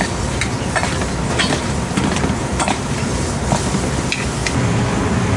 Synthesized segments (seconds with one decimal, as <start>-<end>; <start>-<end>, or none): 1.2-1.9; 2.4-3.0